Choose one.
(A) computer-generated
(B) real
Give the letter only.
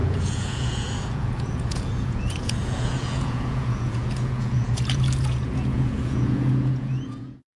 A